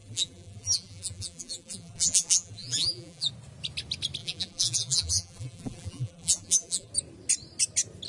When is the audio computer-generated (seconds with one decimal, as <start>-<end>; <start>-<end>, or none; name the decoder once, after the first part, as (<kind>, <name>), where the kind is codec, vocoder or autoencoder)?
0.0-3.3 (vocoder, BigVGAN v2); 4.2-6.9